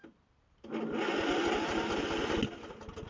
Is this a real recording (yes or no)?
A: yes